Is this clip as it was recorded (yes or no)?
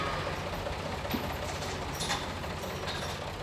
yes